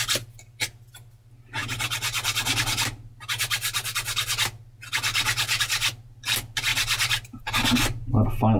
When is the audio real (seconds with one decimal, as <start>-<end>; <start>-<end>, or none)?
0.0-8.6